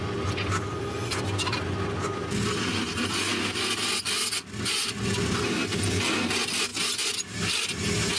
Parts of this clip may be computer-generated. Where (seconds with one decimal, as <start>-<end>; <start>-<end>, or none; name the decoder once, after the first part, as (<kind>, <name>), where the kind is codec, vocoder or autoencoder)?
none